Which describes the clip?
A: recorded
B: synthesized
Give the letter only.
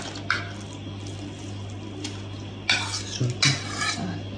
A